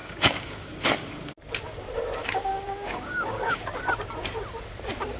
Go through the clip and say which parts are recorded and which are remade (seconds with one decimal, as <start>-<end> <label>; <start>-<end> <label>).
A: 0.0-0.7 remade; 0.7-2.2 recorded; 2.2-3.6 remade; 3.6-5.2 recorded